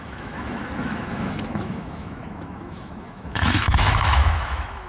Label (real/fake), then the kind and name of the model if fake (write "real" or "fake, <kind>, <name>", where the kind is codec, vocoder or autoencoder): fake, autoencoder, DAC-VAE